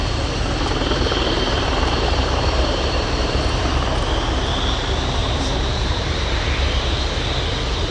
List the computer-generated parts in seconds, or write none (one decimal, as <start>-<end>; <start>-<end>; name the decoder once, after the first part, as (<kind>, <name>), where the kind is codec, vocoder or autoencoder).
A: 0.0-3.7 (vocoder, BigVGAN v2); 5.2-7.0